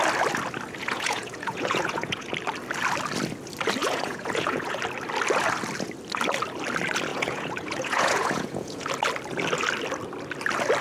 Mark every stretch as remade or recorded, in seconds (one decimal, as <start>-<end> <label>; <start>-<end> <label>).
0.0-0.8 recorded; 0.8-2.3 remade; 2.3-3.8 recorded; 3.8-4.8 remade; 4.8-7.1 recorded; 7.1-8.9 remade; 8.9-10.8 recorded